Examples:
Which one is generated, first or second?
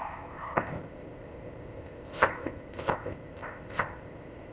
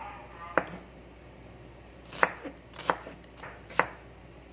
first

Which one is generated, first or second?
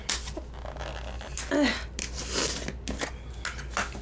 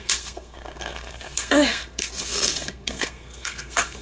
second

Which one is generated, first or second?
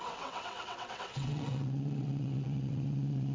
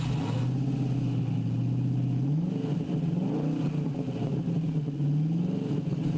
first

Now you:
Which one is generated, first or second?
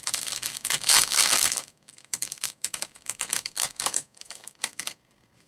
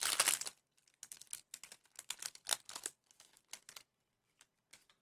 first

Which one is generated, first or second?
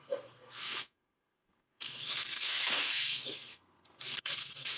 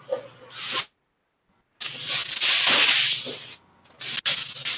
first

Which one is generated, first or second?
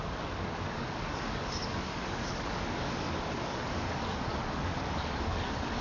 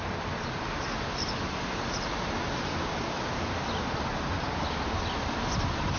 first